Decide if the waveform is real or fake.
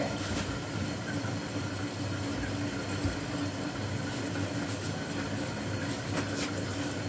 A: real